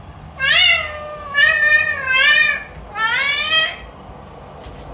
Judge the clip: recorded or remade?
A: recorded